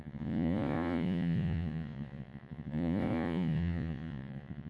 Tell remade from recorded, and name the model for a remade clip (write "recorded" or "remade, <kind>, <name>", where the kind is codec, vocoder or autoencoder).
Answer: remade, vocoder, Vocos